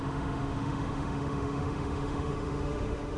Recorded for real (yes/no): no